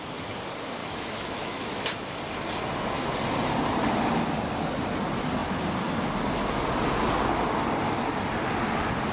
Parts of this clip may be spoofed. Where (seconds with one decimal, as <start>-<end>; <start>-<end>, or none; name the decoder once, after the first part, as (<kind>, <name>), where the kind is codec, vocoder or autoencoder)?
0.8-1.9 (autoencoder, DAC-VAE)